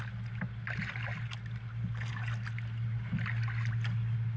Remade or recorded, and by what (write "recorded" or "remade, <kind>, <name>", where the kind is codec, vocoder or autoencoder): recorded